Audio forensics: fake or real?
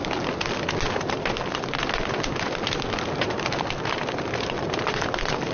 real